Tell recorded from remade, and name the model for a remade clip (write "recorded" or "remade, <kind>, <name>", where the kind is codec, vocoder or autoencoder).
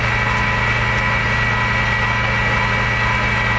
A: recorded